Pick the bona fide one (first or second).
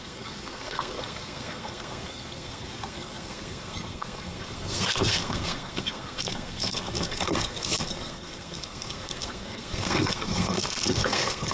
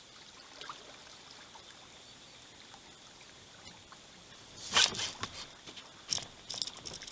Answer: second